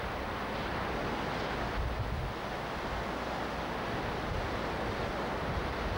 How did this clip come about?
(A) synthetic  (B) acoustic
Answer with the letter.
B